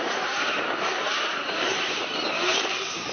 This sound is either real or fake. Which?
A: fake